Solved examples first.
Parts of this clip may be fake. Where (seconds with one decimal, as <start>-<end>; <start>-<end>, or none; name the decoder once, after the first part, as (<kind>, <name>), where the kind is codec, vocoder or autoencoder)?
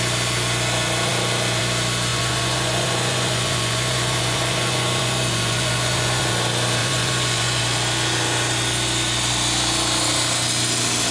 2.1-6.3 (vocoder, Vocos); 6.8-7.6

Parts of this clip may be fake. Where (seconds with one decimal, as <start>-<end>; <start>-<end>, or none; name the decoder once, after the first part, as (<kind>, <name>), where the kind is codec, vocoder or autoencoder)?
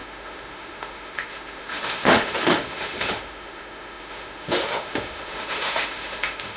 0.0-6.6 (autoencoder, DAC-VAE)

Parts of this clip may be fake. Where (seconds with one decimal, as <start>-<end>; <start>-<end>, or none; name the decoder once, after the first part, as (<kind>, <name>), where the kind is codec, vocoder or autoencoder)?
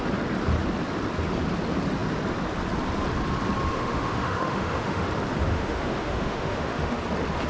3.7-5.1 (autoencoder, DAC-VAE); 5.5-7.0